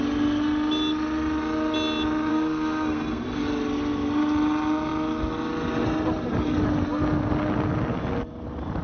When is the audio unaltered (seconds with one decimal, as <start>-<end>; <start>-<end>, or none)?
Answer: 0.0-2.3; 3.4-8.8